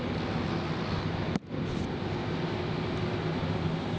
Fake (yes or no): no